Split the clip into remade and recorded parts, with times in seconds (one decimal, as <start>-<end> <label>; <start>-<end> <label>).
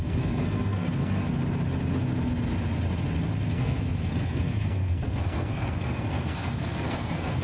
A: 0.0-1.2 remade; 1.2-3.5 recorded; 3.5-7.4 remade